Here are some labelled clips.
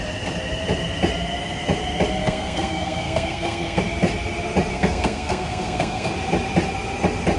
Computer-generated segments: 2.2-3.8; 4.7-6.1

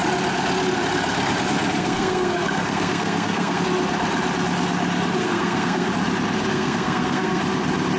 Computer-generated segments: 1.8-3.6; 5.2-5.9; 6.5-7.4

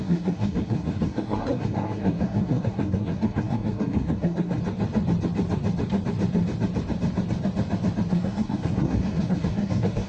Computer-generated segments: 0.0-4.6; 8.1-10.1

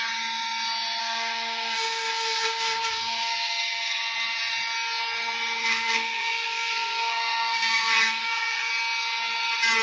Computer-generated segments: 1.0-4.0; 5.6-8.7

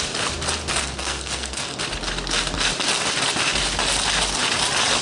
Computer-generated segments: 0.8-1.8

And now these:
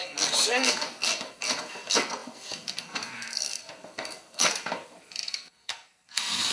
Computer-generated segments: 0.0-6.5